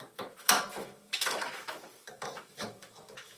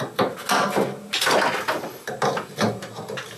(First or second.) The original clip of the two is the second